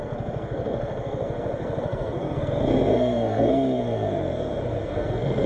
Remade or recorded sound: remade